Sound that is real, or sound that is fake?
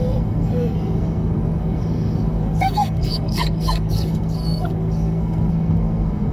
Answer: fake